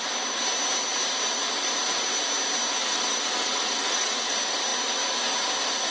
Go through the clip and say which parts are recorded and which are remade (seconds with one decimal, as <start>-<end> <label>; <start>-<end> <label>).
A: 0.0-2.8 recorded; 2.8-4.3 remade; 4.3-5.9 recorded